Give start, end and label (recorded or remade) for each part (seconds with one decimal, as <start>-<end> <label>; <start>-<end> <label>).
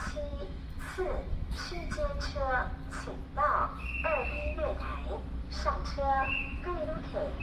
0.0-2.3 remade; 2.3-4.3 recorded; 4.3-4.9 remade; 4.9-5.7 recorded; 5.7-7.4 remade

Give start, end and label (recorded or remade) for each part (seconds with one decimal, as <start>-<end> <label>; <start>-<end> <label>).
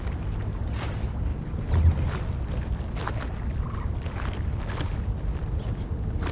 0.0-6.3 recorded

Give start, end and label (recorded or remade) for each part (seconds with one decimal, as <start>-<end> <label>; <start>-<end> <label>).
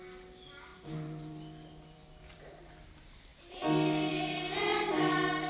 0.0-0.7 recorded; 0.7-2.8 remade; 2.8-4.7 recorded; 4.7-5.5 remade